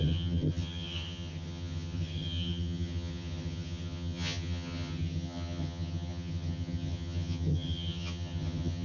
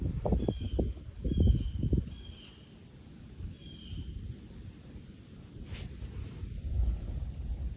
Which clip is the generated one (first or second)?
first